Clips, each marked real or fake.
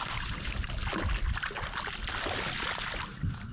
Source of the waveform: real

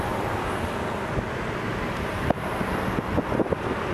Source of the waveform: real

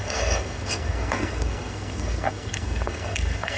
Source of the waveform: fake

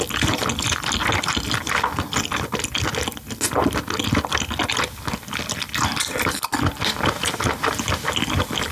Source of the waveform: real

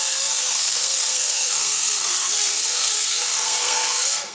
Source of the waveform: fake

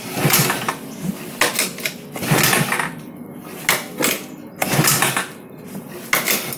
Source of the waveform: real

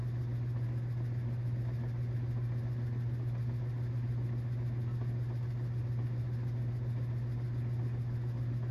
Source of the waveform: real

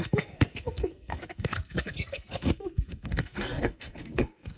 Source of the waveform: fake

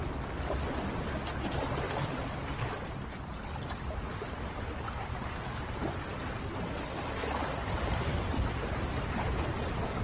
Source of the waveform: real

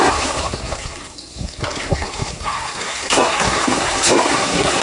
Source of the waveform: fake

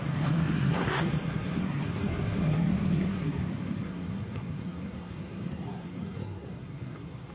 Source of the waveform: fake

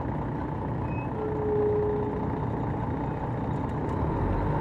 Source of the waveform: real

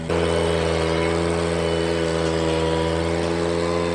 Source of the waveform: real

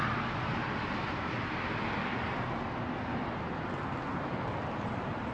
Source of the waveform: real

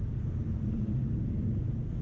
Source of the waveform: real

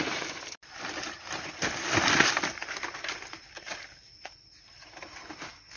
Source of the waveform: real